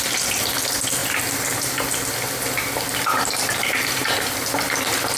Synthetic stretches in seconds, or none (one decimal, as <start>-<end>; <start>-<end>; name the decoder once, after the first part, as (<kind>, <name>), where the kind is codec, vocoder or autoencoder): none